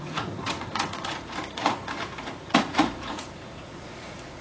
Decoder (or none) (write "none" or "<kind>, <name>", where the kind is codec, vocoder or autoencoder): vocoder, Vocos